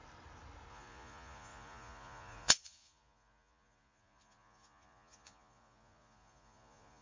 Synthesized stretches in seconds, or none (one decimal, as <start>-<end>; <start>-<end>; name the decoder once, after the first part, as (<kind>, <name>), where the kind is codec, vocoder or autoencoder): 0.7-7.0 (vocoder, Vocos)